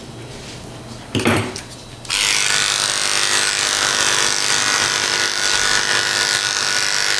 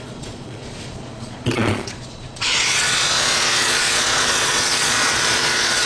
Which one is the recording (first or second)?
first